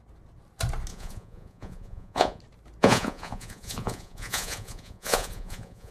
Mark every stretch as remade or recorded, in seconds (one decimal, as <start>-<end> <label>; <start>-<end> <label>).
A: 0.0-0.9 recorded; 0.9-2.4 remade; 2.4-2.8 recorded; 2.8-5.9 remade